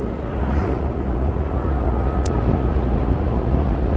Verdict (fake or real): fake